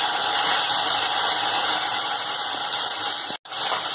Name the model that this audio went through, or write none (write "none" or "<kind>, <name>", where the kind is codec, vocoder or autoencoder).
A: none